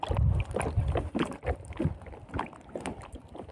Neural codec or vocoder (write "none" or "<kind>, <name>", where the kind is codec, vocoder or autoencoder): none